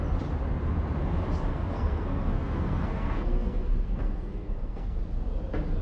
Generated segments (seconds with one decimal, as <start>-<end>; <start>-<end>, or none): 1.5-5.0